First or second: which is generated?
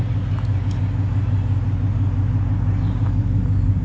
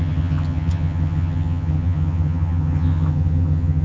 second